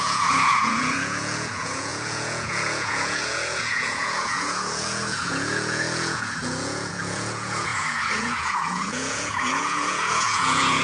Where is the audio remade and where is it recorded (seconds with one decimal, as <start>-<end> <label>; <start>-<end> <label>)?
0.0-10.8 remade